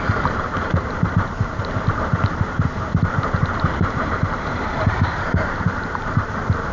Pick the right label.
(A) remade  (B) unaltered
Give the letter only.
A